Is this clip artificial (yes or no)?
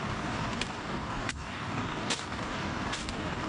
yes